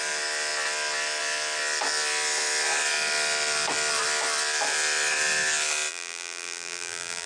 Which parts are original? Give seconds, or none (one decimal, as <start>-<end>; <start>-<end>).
0.0-5.9